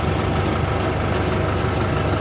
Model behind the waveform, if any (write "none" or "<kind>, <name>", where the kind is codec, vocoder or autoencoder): none